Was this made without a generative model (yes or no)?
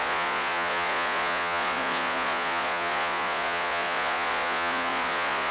no